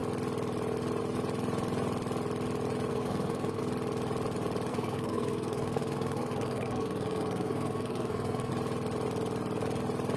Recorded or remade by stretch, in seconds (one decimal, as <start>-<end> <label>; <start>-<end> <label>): 0.0-2.9 recorded; 2.9-3.6 remade; 3.6-4.7 recorded; 4.7-8.5 remade; 8.5-10.2 recorded